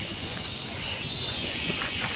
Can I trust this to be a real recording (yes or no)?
no